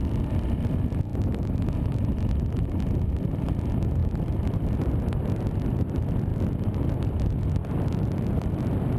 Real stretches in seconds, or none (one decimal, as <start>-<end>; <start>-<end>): 0.0-1.1; 2.1-4.0; 4.9-6.3; 6.9-7.6; 8.6-9.0